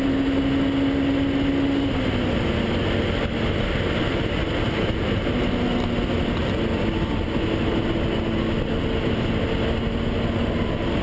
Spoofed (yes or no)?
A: no